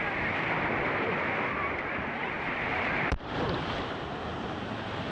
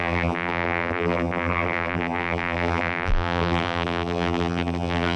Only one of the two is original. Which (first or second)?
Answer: first